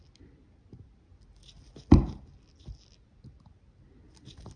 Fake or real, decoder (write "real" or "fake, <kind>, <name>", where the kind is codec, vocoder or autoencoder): real